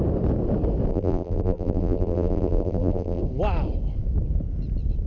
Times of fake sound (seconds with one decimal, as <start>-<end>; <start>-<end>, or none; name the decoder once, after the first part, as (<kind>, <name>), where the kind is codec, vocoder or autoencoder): 0.9-3.2 (vocoder, BigVGAN v2)